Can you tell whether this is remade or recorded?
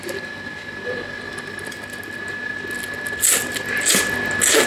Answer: recorded